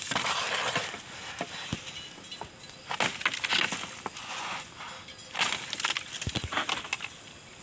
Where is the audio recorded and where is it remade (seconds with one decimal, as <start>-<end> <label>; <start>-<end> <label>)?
0.0-4.2 recorded; 4.2-4.7 remade; 4.7-7.6 recorded